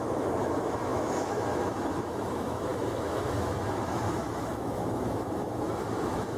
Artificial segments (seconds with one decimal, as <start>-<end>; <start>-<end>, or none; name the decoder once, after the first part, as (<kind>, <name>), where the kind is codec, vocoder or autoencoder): 0.0-6.4 (autoencoder, DAC-VAE)